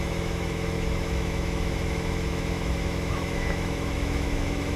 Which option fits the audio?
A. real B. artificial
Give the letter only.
B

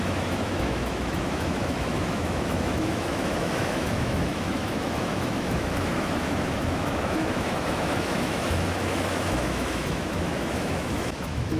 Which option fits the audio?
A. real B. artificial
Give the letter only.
B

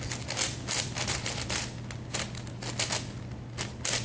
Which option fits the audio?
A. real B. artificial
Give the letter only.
A